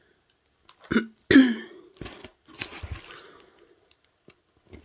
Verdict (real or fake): real